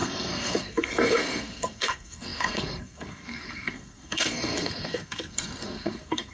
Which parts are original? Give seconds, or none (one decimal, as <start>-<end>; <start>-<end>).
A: none